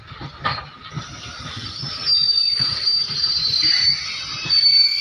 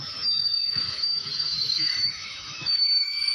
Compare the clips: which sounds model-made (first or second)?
second